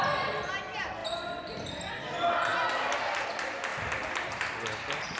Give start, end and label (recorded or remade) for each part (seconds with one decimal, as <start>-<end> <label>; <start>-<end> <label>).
0.0-1.0 recorded; 1.0-1.9 remade; 1.9-3.7 recorded; 3.7-5.2 remade